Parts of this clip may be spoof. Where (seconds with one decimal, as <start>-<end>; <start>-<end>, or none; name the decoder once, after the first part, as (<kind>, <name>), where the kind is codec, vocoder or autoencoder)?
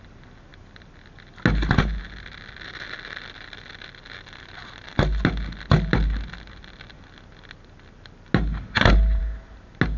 none